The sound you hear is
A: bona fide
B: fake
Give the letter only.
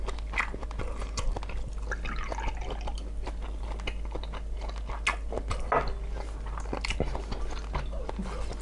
A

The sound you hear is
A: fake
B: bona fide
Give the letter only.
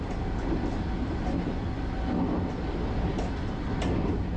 B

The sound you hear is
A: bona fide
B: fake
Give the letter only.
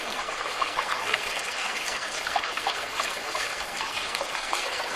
B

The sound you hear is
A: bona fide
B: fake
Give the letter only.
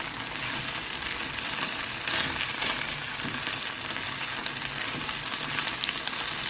A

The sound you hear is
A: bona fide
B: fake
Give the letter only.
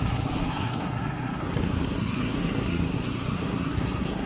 B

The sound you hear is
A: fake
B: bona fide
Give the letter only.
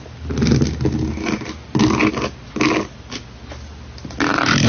B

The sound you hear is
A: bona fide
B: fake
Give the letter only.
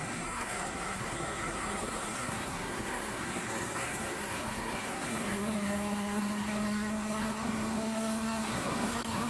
B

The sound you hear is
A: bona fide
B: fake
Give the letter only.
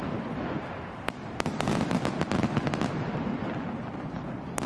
A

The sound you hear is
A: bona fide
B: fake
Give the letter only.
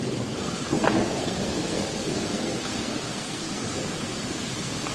B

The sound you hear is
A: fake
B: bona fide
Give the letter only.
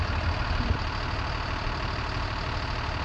B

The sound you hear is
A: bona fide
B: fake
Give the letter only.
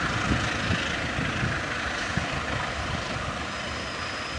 A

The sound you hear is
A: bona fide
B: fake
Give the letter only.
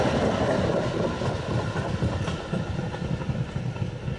A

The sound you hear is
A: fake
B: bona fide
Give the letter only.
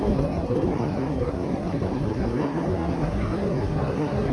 A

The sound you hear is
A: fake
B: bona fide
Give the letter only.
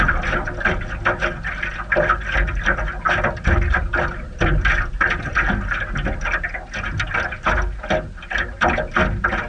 B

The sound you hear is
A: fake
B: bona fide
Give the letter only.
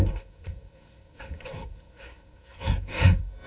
A